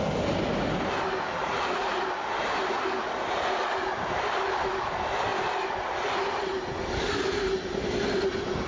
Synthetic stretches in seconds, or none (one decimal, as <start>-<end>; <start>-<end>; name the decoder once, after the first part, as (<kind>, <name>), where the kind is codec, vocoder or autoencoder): 1.4-2.0 (vocoder, Vocos)